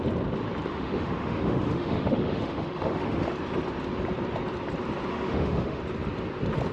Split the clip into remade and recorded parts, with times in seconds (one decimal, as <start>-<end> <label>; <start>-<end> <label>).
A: 0.0-0.7 recorded; 0.7-3.3 remade; 3.3-5.1 recorded; 5.1-5.8 remade; 5.8-6.7 recorded